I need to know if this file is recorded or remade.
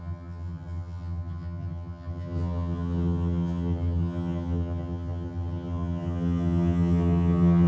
remade